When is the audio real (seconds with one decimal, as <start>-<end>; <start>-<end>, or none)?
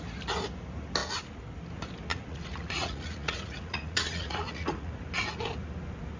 0.0-2.1; 4.9-6.2